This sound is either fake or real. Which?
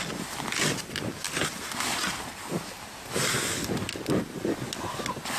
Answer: real